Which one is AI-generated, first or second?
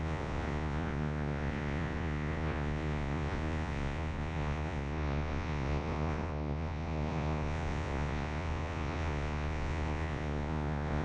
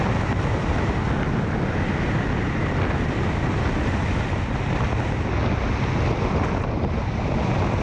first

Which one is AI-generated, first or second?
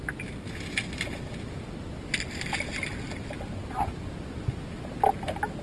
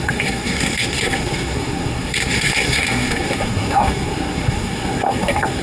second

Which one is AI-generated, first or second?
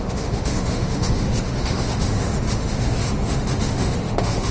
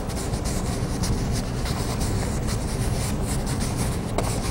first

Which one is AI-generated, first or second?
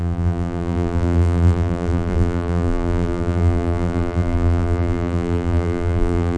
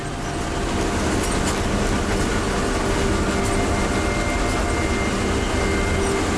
first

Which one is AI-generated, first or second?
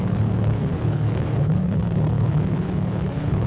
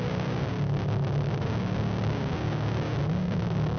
first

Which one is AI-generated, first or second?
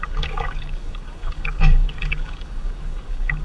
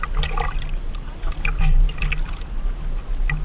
first